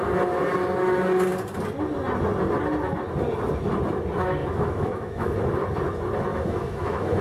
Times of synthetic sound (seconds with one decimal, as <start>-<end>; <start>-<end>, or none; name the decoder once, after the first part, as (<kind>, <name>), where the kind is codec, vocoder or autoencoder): 4.4-5.3 (autoencoder, DAC-VAE); 6.3-7.2